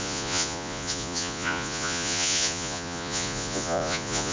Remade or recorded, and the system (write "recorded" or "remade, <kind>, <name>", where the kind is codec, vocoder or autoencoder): remade, vocoder, Vocos